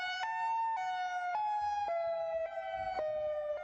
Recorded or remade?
recorded